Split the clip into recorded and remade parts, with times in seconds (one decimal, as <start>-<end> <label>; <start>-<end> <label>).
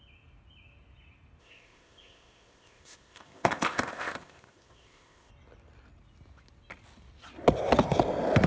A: 0.0-1.4 recorded; 1.4-5.3 remade; 5.3-8.5 recorded